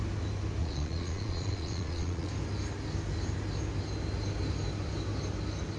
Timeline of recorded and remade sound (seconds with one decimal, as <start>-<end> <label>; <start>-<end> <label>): 0.0-0.6 recorded; 0.6-2.3 remade; 2.3-5.8 recorded